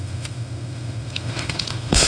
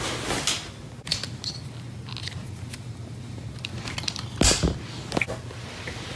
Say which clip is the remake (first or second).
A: first